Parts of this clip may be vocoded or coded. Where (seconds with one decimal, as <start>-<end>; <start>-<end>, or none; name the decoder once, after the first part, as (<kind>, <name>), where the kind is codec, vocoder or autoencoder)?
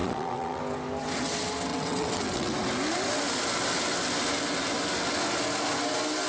0.0-0.6 (vocoder, WaveNeXt); 1.7-2.5